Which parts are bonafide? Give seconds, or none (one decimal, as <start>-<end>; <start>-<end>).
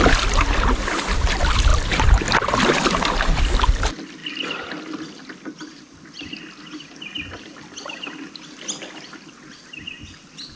0.0-1.7; 3.4-10.6